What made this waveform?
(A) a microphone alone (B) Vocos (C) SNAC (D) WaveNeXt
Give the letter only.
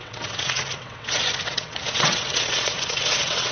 D